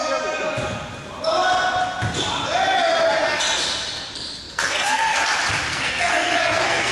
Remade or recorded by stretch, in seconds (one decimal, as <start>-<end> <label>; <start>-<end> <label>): 0.0-4.1 recorded; 4.1-5.2 remade; 5.2-5.7 recorded; 5.7-6.9 remade